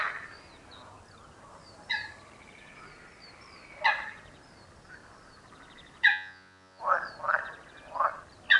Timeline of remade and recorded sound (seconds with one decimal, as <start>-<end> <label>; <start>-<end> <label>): 0.0-6.1 recorded; 6.1-6.8 remade; 6.8-8.6 recorded